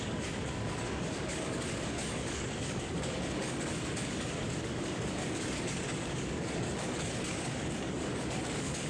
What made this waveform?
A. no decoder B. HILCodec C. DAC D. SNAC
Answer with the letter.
C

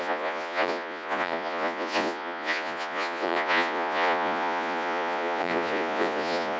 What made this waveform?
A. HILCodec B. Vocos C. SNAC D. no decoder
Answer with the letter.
B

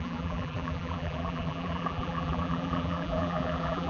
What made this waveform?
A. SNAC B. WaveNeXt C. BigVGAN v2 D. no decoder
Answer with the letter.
C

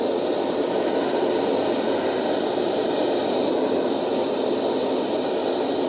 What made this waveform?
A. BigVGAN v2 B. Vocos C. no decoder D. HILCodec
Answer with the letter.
C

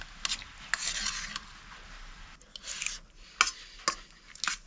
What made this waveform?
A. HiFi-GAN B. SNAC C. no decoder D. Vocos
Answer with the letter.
C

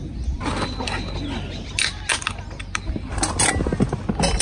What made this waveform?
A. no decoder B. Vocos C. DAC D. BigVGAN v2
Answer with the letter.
A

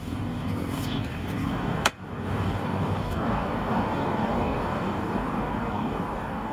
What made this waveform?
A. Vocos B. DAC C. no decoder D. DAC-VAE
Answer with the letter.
B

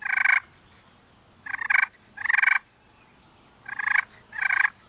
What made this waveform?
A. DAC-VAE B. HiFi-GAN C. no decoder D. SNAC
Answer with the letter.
C